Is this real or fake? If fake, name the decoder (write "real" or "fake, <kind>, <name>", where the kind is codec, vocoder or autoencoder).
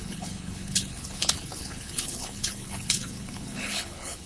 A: fake, codec, HILCodec